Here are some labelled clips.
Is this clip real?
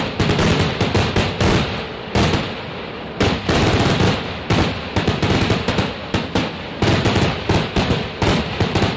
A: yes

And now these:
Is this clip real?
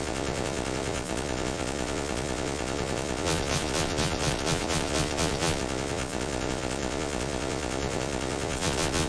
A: no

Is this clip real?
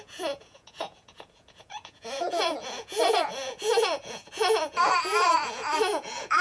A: no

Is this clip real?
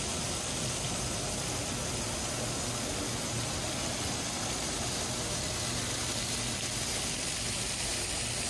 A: yes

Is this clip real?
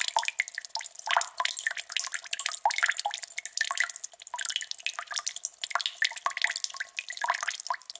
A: yes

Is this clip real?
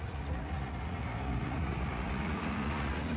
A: no